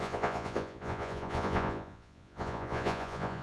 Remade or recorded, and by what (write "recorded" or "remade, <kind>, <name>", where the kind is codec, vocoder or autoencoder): remade, vocoder, Vocos